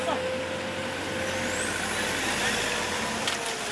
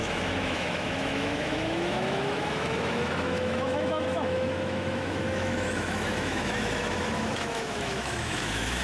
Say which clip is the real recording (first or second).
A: first